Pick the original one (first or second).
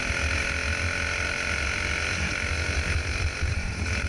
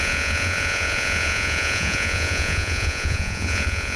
first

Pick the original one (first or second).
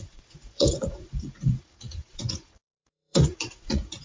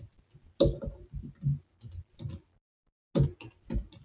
second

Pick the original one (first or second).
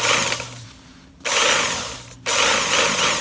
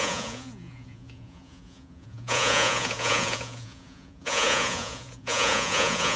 first